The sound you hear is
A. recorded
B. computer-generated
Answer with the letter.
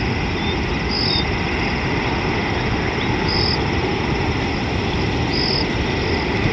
A